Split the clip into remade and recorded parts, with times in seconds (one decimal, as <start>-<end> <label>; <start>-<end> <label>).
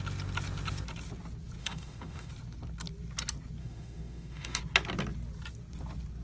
0.0-1.6 recorded; 1.6-2.3 remade; 2.3-3.6 recorded; 3.6-4.6 remade; 4.6-6.2 recorded